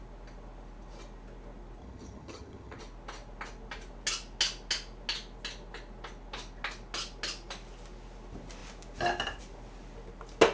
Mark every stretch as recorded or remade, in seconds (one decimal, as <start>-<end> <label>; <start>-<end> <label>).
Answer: 0.0-1.8 recorded; 1.8-2.8 remade; 2.8-10.5 recorded